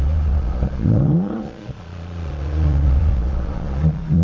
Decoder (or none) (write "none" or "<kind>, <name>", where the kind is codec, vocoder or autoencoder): vocoder, Vocos